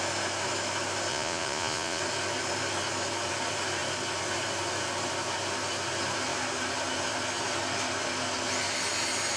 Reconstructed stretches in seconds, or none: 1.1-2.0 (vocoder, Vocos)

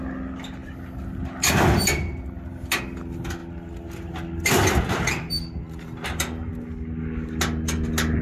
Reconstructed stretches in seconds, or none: none

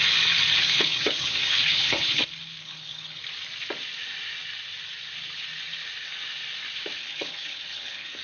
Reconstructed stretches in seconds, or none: 0.5-2.2 (codec, HILCodec); 2.6-3.2; 7.0-8.2

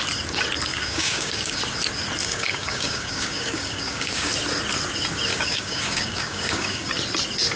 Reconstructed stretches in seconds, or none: 0.7-1.6 (codec, DAC); 2.2-4.3; 5.3-6.9

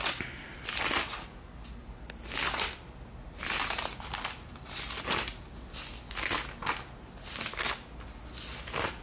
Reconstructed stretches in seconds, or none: none

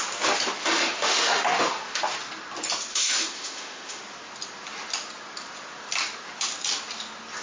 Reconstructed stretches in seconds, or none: 0.6-2.0 (autoencoder, DAC-VAE); 2.9-4.0

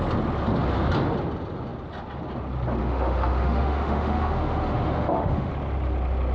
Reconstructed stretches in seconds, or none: 2.8-5.5 (autoencoder, DAC-VAE)

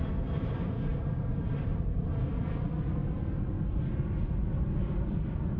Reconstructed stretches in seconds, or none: none